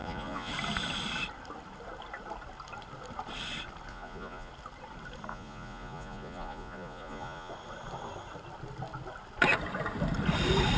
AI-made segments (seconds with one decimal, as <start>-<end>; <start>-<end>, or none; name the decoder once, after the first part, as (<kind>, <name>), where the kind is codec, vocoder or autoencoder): 0.0-0.5 (vocoder, Vocos); 3.9-4.5; 5.3-7.5